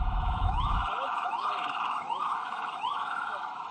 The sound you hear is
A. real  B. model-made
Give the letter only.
B